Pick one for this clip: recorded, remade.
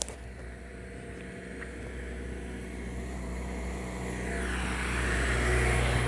recorded